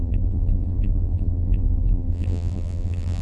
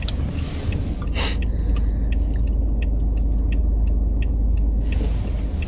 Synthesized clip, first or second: first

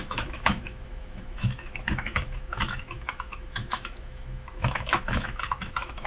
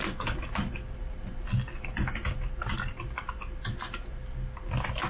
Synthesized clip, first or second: first